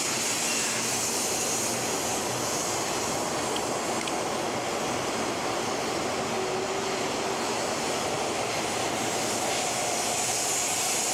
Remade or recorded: recorded